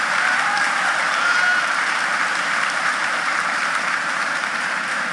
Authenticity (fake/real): fake